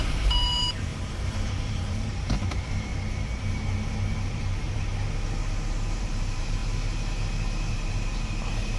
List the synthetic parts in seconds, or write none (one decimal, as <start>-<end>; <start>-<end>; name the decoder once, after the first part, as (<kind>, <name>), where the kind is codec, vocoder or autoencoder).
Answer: 0.0-0.9 (vocoder, BigVGAN v2); 1.7-2.9; 4.3-4.9; 6.0-6.6; 7.7-8.8